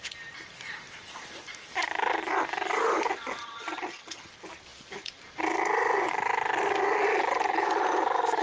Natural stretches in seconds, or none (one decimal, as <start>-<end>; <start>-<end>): 0.0-3.4; 4.3-8.4